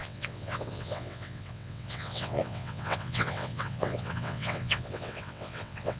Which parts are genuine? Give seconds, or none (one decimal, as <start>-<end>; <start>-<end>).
none